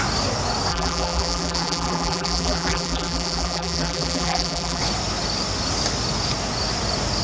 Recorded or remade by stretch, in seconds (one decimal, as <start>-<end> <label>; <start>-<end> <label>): 0.0-0.7 recorded; 0.7-4.8 remade; 4.8-7.2 recorded

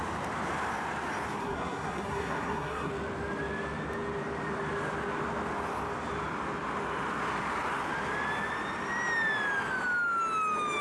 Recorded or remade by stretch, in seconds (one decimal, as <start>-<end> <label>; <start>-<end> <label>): 0.0-1.4 recorded; 1.4-2.9 remade; 2.9-10.8 recorded

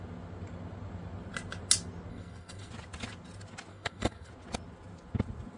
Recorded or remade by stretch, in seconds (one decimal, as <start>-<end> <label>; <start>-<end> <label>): 0.0-2.1 recorded; 2.1-2.7 remade; 2.7-3.7 recorded; 3.7-4.3 remade; 4.3-5.6 recorded

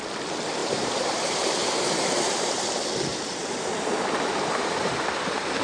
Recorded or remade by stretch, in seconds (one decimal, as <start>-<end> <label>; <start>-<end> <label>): 0.0-0.6 recorded; 0.6-2.7 remade; 2.7-3.1 recorded; 3.1-4.9 remade; 4.9-5.6 recorded

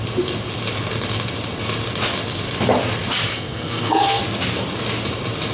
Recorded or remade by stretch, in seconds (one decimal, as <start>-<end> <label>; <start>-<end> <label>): 0.0-3.3 recorded; 3.3-4.2 remade; 4.2-5.5 recorded

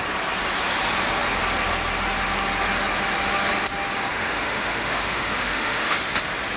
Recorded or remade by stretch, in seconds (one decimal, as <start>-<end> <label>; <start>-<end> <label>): 0.0-4.1 recorded; 4.1-6.0 remade; 6.0-6.6 recorded

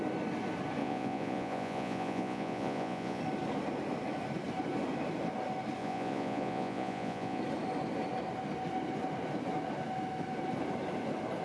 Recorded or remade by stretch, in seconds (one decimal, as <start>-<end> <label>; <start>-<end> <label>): 0.0-0.8 recorded; 0.8-3.2 remade; 3.2-5.8 recorded; 5.8-7.4 remade; 7.4-11.4 recorded

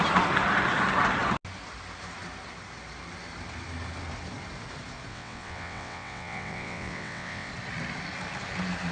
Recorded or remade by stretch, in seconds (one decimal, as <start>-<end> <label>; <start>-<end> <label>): 0.0-5.1 recorded; 5.1-7.5 remade; 7.5-8.9 recorded